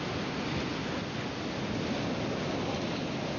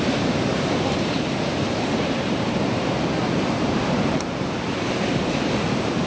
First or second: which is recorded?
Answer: first